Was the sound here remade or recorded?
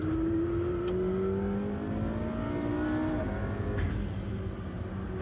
recorded